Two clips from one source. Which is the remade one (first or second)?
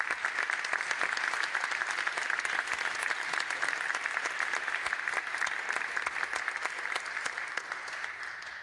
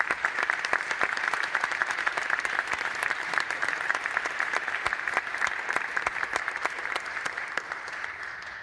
second